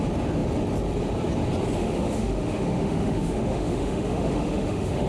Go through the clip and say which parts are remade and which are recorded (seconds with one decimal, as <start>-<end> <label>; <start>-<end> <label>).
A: 0.0-1.8 recorded; 1.8-5.1 remade